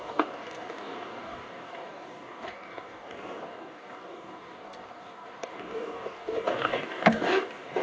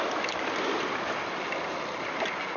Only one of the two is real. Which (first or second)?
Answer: second